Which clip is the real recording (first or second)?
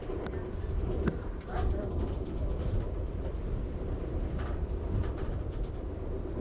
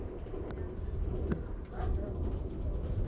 second